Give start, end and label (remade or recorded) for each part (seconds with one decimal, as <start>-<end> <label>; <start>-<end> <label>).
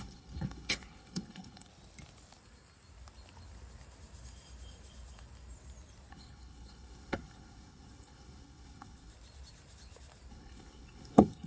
0.0-1.7 remade; 1.7-6.1 recorded; 6.1-9.1 remade; 9.1-10.3 recorded; 10.3-11.5 remade